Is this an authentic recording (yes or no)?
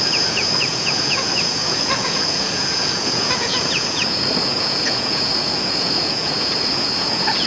no